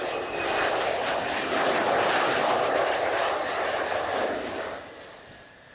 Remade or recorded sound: recorded